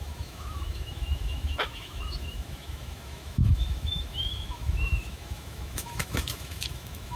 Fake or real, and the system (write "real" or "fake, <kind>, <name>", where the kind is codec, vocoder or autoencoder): fake, autoencoder, DAC-VAE